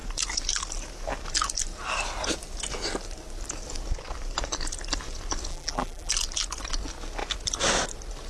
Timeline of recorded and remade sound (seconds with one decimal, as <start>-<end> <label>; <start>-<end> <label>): 0.0-5.5 recorded; 5.5-6.1 remade; 6.1-8.3 recorded

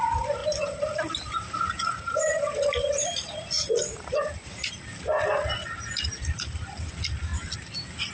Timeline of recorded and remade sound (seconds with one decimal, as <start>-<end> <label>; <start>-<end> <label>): 0.0-5.1 remade; 5.1-6.2 recorded; 6.2-7.3 remade; 7.3-8.1 recorded

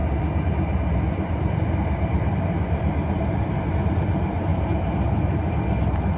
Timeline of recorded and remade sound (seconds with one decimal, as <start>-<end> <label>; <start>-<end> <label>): 0.0-3.7 remade; 3.7-4.5 recorded; 4.5-5.4 remade; 5.4-6.2 recorded

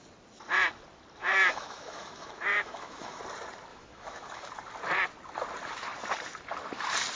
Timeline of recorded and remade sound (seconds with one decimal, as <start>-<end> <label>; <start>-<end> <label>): 0.0-1.2 recorded; 1.2-3.2 remade; 3.2-3.7 recorded; 3.7-4.5 remade; 4.5-7.2 recorded

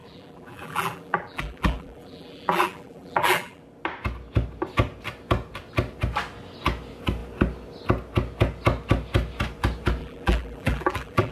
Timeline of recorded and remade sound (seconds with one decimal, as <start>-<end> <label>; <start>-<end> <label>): 0.0-3.6 remade; 3.6-10.0 recorded; 10.0-11.3 remade

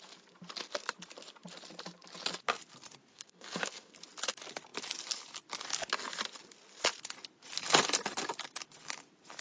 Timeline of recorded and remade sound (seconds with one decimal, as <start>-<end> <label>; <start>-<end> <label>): 0.0-3.1 recorded; 3.1-3.9 remade; 3.9-9.4 recorded

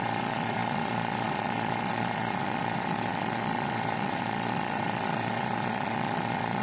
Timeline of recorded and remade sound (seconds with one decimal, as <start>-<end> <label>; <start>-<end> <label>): 0.0-6.6 remade